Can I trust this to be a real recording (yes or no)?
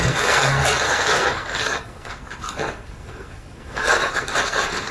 no